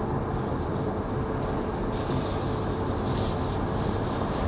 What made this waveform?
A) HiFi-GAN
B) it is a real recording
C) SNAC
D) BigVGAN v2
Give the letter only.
B